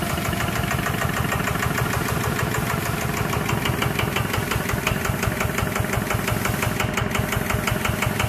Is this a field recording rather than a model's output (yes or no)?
yes